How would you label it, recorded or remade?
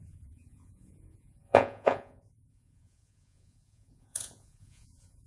remade